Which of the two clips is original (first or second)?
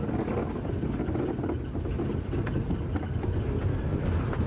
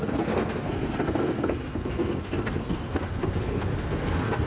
first